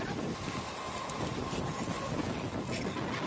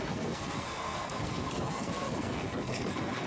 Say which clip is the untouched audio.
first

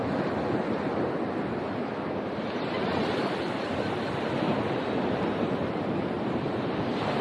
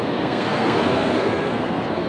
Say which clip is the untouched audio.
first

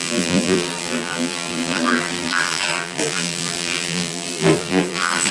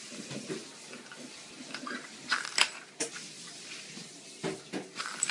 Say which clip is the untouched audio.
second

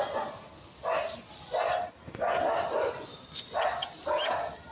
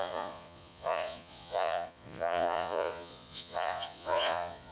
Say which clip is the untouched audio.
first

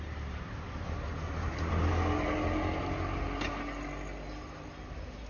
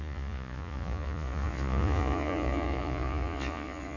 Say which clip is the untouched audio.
first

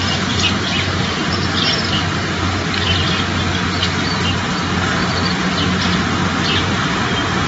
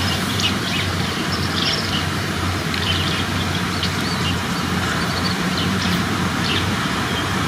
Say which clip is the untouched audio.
first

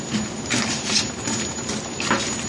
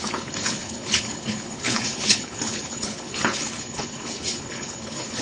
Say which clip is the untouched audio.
first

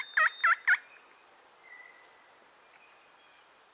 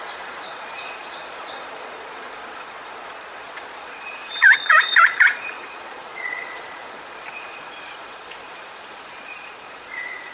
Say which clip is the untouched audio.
first